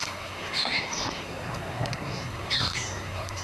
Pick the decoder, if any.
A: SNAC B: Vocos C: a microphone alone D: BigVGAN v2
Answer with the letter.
A